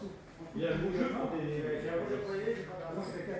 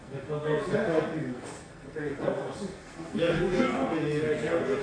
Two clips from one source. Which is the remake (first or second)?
second